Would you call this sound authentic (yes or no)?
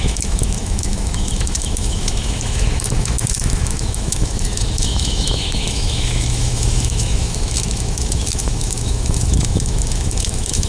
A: no